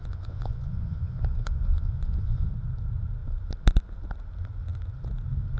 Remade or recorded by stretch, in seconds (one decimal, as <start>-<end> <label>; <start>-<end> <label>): 0.0-2.5 remade; 2.5-5.6 recorded